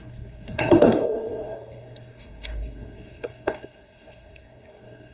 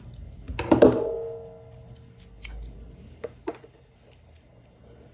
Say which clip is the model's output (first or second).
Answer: first